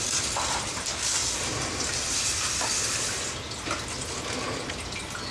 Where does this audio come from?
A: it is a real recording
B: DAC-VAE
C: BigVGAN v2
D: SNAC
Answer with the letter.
A